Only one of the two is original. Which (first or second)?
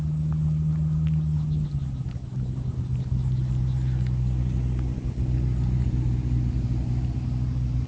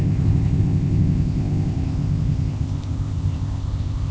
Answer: first